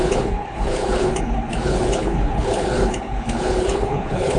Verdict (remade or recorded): remade